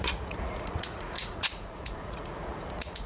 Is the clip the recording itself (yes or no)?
no